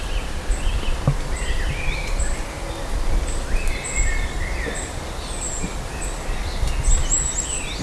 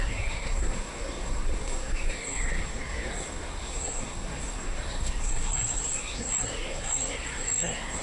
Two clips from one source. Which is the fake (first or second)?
second